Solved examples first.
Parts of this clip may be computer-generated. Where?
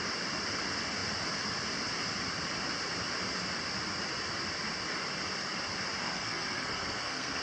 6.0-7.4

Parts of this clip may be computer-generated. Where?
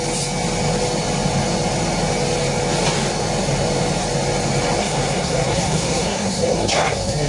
4.8-7.3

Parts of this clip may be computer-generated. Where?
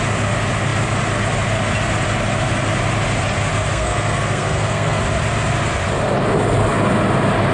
3.7-5.0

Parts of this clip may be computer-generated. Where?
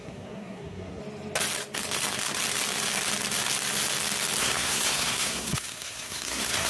0.0-1.0; 4.4-6.7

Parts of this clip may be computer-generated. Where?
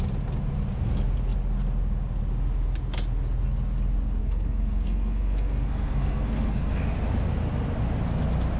4.2-6.8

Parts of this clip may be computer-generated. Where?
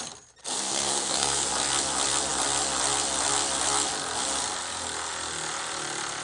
0.4-1.5